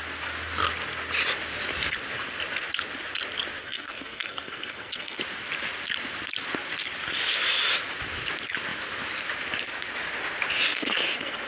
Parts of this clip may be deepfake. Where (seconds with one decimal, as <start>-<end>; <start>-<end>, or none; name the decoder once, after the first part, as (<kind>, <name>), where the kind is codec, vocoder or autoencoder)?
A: 3.6-5.2 (codec, SNAC); 10.7-11.5

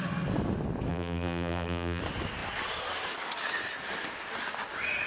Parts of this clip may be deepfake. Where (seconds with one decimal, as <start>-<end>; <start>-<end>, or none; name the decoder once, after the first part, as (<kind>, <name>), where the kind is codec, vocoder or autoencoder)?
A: 0.9-2.0 (vocoder, BigVGAN v2)

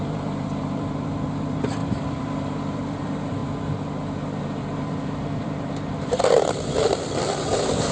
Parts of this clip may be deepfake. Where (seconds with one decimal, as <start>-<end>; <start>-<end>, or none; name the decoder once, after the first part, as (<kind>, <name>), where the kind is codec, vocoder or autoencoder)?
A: 0.0-3.4 (vocoder, BigVGAN v2); 4.4-7.9

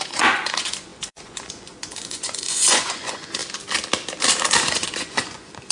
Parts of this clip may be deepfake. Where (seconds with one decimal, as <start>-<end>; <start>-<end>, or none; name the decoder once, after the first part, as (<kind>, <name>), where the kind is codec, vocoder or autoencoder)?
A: 0.0-3.4 (vocoder, Vocos); 4.6-5.7